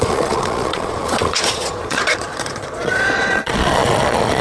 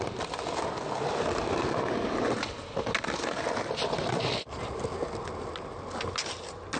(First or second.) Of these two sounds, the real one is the second